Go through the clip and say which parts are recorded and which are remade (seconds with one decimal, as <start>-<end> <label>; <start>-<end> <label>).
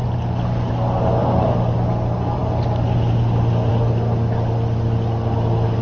0.0-5.8 recorded